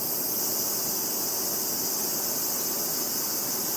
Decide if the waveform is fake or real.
real